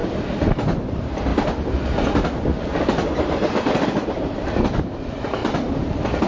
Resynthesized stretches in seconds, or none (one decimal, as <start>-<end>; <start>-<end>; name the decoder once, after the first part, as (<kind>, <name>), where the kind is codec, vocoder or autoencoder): 0.9-1.3 (vocoder, BigVGAN v2); 2.8-5.4